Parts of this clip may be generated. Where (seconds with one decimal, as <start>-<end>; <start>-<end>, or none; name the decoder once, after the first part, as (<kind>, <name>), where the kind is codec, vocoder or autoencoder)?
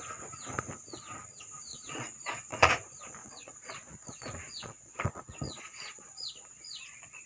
1.7-2.7 (vocoder, Vocos); 3.2-7.3